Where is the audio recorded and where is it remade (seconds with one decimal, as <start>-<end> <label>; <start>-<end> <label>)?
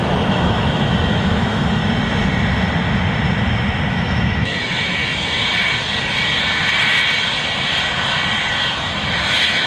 0.0-1.8 remade; 1.8-3.9 recorded; 3.9-5.0 remade; 5.0-8.7 recorded; 8.7-9.7 remade